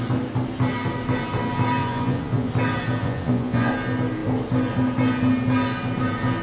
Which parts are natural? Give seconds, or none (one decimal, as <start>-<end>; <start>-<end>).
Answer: 0.0-1.8; 2.5-3.0; 3.7-6.4